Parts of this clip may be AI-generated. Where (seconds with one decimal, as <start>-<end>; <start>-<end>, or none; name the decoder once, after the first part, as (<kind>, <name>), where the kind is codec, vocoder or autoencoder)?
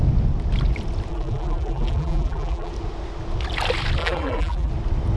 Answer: 1.1-2.7 (vocoder, BigVGAN v2); 4.0-4.7